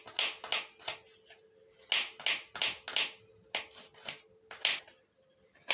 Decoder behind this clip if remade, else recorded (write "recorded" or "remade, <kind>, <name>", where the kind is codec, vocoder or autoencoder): recorded